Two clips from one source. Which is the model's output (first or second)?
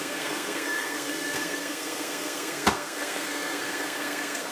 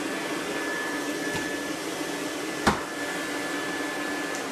first